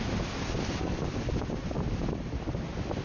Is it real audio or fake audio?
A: real